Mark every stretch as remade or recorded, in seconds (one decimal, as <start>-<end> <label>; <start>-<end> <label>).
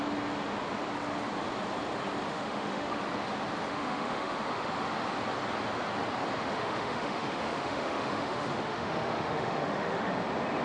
0.0-2.3 recorded; 2.3-3.0 remade; 3.0-3.7 recorded; 3.7-4.7 remade; 4.7-6.4 recorded; 6.4-10.1 remade; 10.1-10.6 recorded